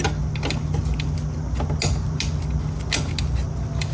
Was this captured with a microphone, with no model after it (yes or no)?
yes